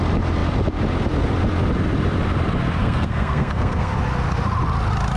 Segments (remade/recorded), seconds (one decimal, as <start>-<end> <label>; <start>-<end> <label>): 0.0-2.8 recorded; 2.8-3.9 remade; 3.9-5.2 recorded